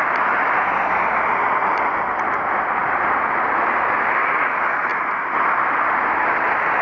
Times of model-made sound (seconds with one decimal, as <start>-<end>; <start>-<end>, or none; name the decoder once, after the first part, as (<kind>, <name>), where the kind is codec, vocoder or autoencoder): none